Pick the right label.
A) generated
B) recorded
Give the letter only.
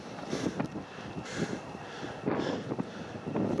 B